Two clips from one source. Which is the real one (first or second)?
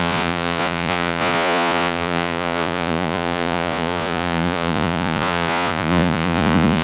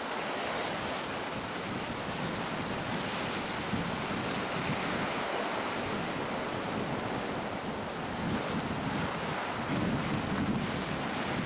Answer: second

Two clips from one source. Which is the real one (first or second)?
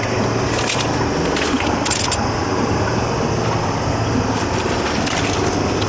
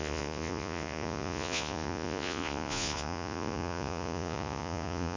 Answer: first